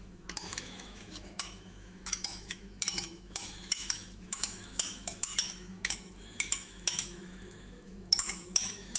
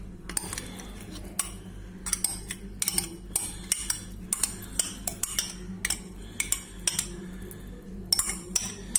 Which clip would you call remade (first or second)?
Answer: first